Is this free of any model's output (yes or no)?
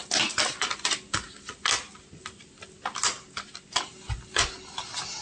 yes